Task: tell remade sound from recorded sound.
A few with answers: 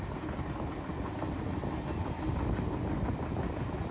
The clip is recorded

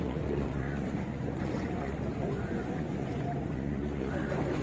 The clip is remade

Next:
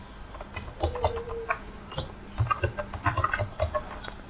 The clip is recorded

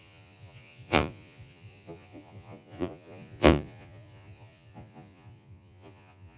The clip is remade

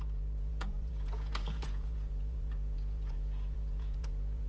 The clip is remade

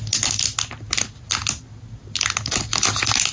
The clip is recorded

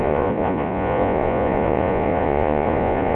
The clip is remade